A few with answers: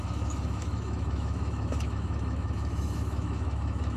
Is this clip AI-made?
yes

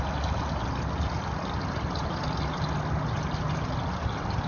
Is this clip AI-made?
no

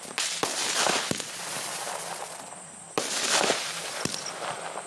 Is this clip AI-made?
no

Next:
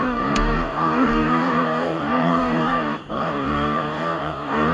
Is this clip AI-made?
yes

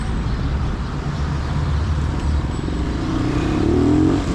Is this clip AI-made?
yes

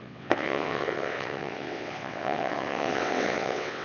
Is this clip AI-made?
yes